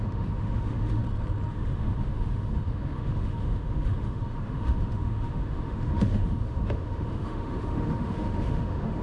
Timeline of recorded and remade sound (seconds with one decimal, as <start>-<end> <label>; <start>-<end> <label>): 0.0-1.0 remade; 1.0-1.5 recorded; 1.5-9.0 remade